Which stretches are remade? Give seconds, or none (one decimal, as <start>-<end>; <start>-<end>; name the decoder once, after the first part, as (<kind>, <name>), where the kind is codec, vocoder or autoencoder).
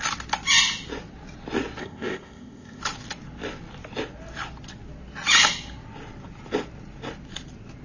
1.8-2.8 (codec, ZipCodec)